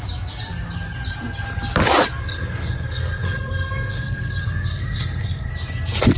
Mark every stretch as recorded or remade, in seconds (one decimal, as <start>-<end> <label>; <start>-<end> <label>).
0.0-2.2 recorded; 2.2-5.5 remade; 5.5-6.2 recorded